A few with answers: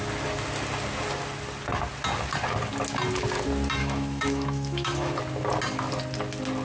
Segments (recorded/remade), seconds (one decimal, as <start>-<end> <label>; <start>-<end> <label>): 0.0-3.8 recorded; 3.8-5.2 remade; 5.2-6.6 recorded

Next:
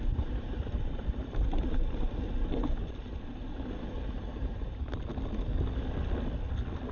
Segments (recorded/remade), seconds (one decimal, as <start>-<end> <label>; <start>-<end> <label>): 0.0-5.1 remade; 5.1-6.9 recorded

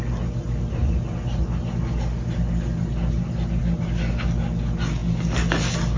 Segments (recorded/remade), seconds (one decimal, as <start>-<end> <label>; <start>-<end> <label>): 0.0-6.0 recorded

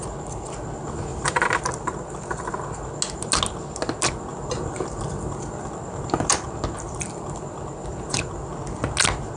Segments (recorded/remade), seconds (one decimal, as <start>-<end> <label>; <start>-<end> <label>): 0.0-1.1 recorded; 1.1-2.4 remade; 2.4-4.3 recorded; 4.3-6.3 remade; 6.3-7.8 recorded; 7.8-8.9 remade; 8.9-9.4 recorded

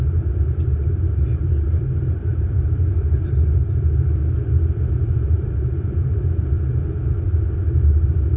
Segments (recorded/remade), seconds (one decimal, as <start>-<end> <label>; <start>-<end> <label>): 0.0-4.2 remade; 4.2-5.0 recorded; 5.0-8.4 remade

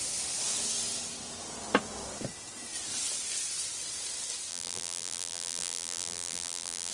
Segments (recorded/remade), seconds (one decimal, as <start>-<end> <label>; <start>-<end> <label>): 0.0-4.5 recorded; 4.5-6.9 remade

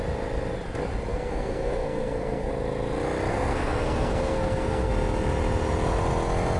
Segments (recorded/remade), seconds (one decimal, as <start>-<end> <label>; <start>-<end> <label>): 0.0-1.1 recorded; 1.1-2.5 remade; 2.5-3.3 recorded; 3.3-4.9 remade; 4.9-6.6 recorded